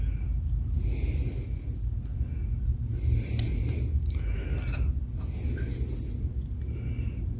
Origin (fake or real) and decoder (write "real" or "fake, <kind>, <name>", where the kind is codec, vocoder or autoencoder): real